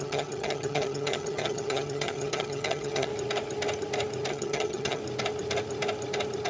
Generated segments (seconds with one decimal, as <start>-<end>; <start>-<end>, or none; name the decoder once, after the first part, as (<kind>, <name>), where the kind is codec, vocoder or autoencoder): 0.0-3.1 (vocoder, HiFi-GAN); 4.3-5.0